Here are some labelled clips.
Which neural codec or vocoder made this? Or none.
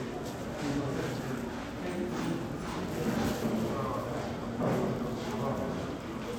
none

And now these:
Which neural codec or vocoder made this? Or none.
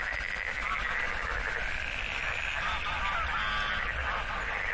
none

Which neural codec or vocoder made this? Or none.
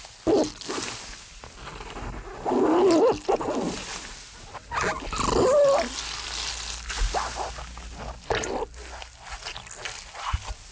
none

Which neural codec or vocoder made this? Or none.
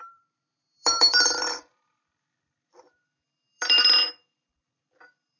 vocoder, BigVGAN v2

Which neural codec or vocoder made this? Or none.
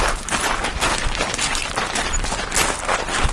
none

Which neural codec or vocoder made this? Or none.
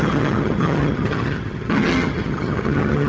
vocoder, HiFi-GAN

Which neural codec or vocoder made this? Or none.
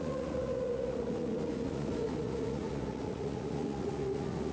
vocoder, Vocos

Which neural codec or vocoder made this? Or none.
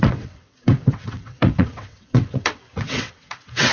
vocoder, WaveNeXt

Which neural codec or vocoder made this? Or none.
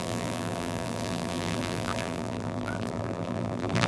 vocoder, BigVGAN v2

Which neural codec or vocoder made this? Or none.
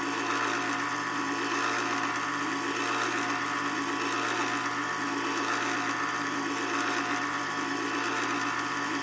none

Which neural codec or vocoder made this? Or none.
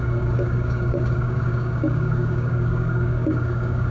codec, DAC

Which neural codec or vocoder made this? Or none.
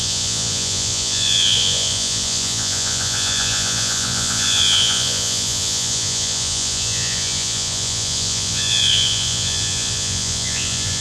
vocoder, Vocos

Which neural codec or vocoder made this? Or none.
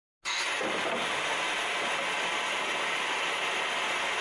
none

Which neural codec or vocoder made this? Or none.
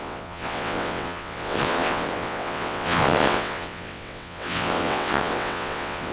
vocoder, WaveNeXt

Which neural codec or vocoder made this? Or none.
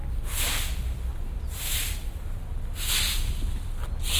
none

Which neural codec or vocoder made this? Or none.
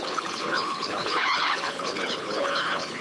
codec, HILCodec